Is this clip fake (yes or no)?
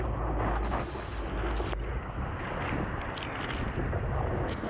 no